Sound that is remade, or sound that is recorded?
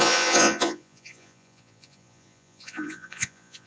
remade